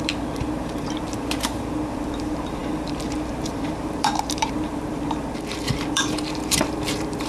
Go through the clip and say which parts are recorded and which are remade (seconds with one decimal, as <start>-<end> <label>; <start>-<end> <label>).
0.0-7.3 remade